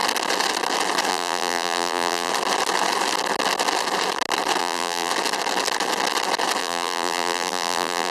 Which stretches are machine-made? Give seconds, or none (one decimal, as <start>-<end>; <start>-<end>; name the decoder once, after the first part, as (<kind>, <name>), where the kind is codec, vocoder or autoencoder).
1.1-2.3 (vocoder, BigVGAN v2); 4.6-5.1; 6.6-8.1